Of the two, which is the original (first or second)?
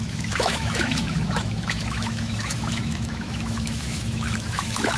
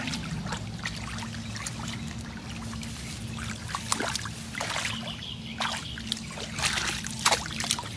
second